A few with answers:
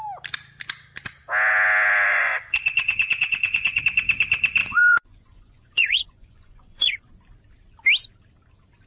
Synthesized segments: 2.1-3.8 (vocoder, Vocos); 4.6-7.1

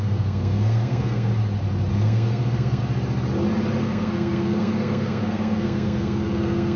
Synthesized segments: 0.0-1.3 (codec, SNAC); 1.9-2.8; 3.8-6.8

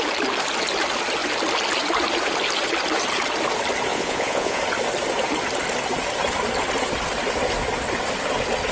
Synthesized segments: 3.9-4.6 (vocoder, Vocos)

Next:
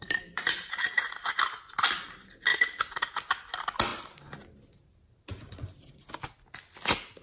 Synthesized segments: 0.0-1.0 (vocoder, BigVGAN v2); 2.5-3.1; 3.9-6.1